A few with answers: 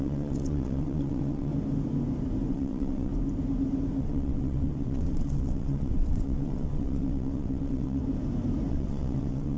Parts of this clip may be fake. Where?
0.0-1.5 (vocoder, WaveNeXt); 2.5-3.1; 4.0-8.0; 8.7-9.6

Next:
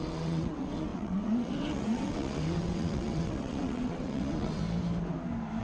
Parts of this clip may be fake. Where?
0.0-4.6 (vocoder, WaveNeXt)

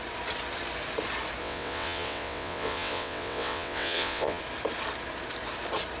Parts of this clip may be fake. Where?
1.4-4.4 (vocoder, WaveNeXt)